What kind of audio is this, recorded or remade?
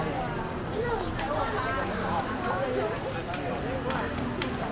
recorded